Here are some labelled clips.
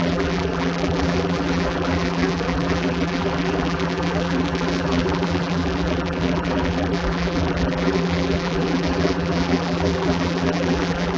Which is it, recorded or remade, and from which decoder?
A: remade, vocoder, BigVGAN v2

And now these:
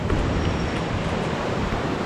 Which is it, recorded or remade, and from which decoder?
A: remade, vocoder, BigVGAN v2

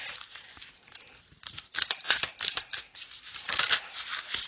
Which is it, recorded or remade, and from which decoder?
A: remade, vocoder, BigVGAN v2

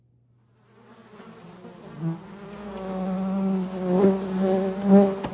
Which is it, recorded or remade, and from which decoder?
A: recorded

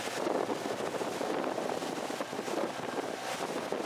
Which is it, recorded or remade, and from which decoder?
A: recorded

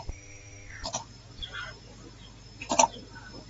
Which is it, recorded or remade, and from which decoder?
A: remade, vocoder, BigVGAN v2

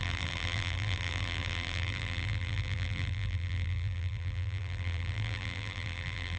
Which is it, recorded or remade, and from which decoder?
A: remade, vocoder, BigVGAN v2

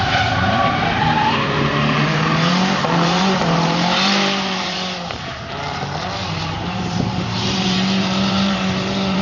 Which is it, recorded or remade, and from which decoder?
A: remade, vocoder, BigVGAN v2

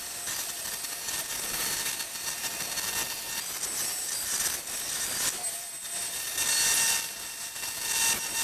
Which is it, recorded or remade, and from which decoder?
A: recorded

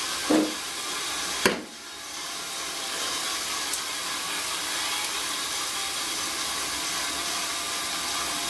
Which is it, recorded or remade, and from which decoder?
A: remade, vocoder, BigVGAN v2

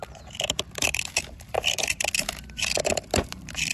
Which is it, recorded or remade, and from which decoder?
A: remade, vocoder, BigVGAN v2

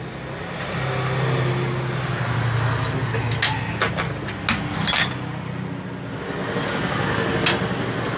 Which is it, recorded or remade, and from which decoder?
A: recorded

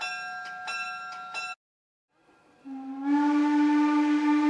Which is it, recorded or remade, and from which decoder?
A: recorded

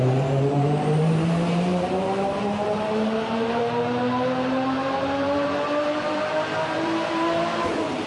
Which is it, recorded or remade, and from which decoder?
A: remade, vocoder, BigVGAN v2